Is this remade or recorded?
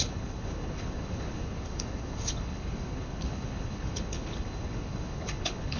remade